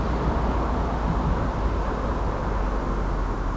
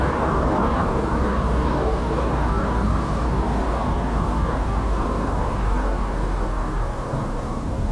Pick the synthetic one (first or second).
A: second